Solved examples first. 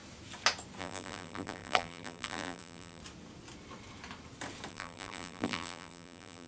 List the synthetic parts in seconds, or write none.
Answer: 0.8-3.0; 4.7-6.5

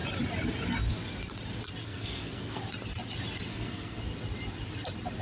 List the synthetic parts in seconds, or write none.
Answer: 1.8-2.6; 3.5-4.0

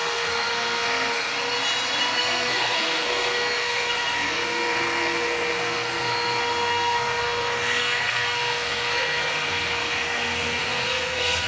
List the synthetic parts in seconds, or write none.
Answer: 0.0-1.3; 2.2-11.5

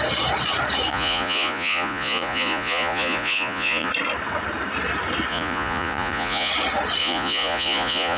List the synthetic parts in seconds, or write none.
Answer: 0.9-3.9; 5.3-6.5; 7.0-8.2